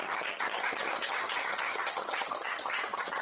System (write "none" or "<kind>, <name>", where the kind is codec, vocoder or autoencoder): vocoder, HiFi-GAN